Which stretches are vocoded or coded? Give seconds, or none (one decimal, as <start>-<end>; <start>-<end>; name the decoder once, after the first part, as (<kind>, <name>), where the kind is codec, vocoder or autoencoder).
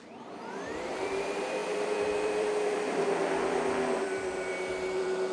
0.0-5.3 (vocoder, BigVGAN v2)